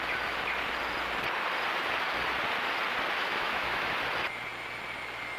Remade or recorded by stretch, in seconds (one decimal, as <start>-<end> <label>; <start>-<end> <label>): 0.0-3.2 recorded; 3.2-3.9 remade; 3.9-5.4 recorded